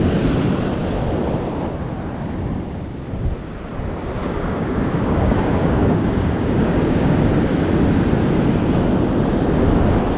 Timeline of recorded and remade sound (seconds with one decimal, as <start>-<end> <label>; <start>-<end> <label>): 0.0-4.2 recorded; 4.2-7.7 remade; 7.7-10.2 recorded